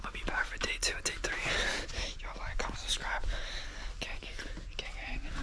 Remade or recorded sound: recorded